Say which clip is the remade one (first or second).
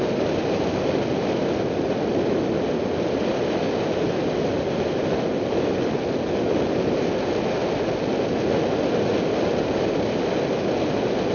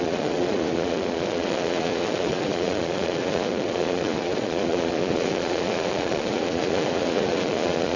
second